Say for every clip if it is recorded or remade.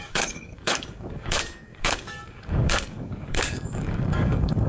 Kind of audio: remade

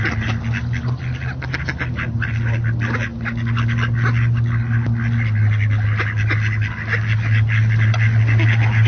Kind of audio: recorded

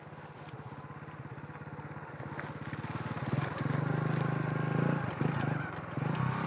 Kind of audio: recorded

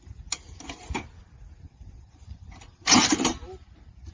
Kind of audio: recorded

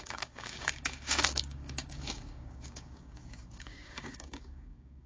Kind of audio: remade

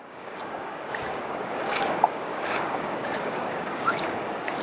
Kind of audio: remade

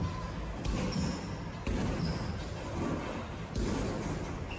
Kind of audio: recorded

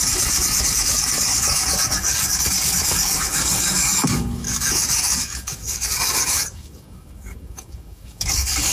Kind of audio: remade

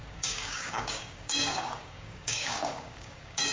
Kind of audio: remade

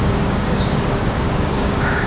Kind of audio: remade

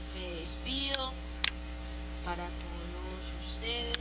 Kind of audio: remade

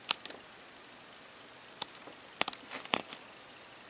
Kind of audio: recorded